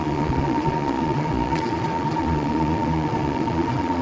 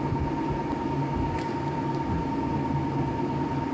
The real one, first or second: second